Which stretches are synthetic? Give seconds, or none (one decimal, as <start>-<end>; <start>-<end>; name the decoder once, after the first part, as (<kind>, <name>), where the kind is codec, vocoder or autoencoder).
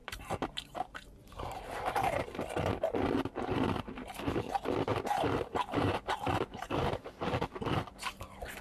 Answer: 0.0-2.4 (vocoder, BigVGAN v2); 4.9-7.5